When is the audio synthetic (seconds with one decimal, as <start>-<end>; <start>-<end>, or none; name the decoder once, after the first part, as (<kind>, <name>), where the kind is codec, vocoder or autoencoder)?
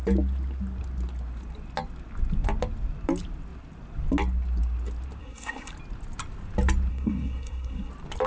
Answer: 5.2-5.7 (codec, SNAC); 6.9-7.9